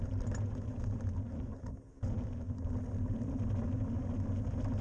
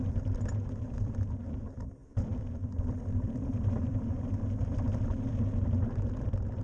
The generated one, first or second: second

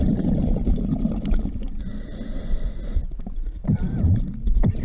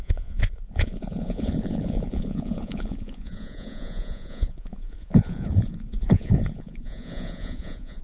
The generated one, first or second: second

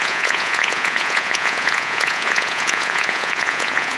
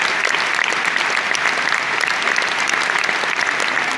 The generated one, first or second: first